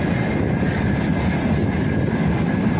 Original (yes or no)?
yes